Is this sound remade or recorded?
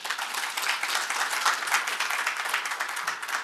recorded